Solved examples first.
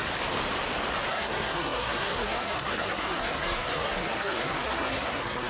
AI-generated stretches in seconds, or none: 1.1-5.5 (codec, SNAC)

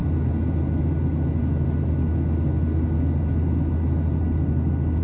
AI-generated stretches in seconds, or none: none

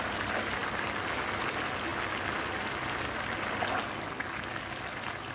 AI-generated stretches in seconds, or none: 1.9-2.5 (vocoder, BigVGAN v2)

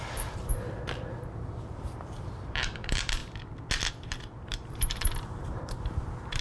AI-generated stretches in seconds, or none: 0.0-0.5 (vocoder, BigVGAN v2); 1.4-3.2; 3.9-6.4

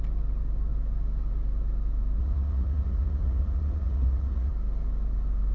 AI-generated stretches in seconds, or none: 2.2-4.5 (vocoder, Vocos)

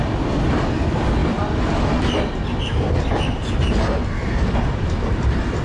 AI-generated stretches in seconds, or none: none

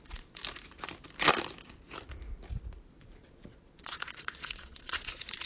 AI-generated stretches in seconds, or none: 0.0-0.4 (vocoder, Vocos); 3.0-5.5